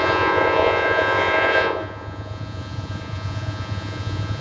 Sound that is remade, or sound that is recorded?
remade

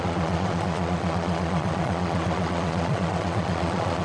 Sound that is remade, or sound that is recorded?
remade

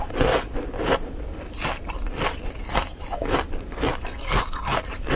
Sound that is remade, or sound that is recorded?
recorded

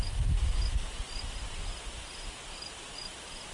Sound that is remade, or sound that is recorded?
recorded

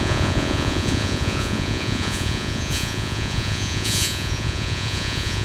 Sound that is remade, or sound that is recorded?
remade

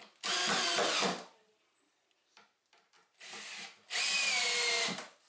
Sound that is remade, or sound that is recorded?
recorded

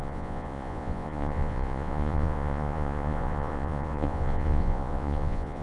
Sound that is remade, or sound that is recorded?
remade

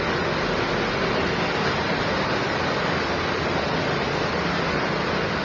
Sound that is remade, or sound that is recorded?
recorded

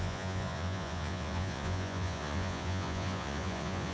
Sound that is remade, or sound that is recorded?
remade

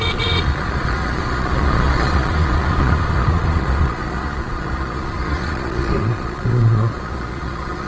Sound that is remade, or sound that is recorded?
remade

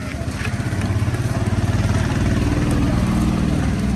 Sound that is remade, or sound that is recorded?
recorded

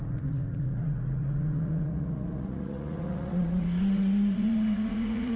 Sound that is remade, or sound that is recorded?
remade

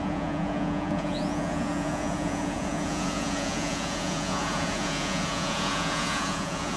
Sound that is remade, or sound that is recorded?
remade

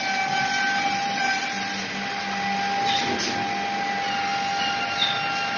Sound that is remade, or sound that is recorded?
recorded